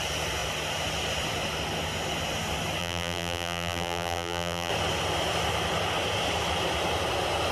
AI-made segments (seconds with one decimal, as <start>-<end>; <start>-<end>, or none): 2.8-4.7